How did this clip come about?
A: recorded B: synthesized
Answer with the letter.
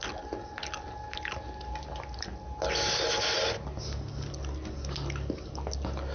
A